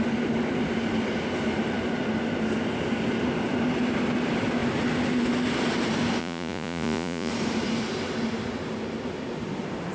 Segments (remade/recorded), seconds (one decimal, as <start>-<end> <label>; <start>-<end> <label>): 0.0-6.2 recorded; 6.2-7.3 remade; 7.3-9.9 recorded